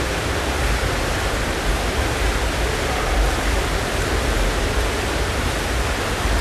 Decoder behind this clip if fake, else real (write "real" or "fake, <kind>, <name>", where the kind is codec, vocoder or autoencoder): real